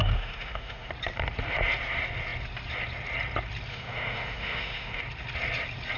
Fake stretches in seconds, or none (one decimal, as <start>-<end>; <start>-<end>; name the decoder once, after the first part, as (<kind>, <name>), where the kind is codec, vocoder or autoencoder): 0.0-0.9 (autoencoder, DAC-VAE); 3.7-5.0